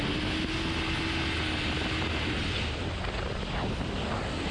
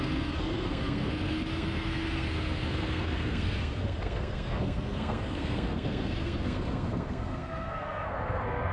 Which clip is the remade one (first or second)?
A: second